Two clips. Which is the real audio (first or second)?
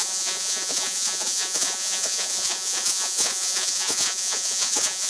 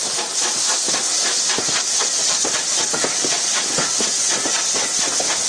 second